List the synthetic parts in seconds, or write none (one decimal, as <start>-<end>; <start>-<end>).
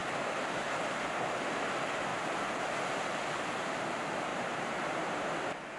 0.0-0.8; 4.3-5.3